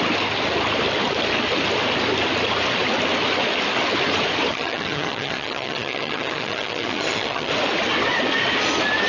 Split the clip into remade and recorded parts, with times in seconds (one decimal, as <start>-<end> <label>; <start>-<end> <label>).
0.0-4.5 recorded; 4.5-7.5 remade; 7.5-9.1 recorded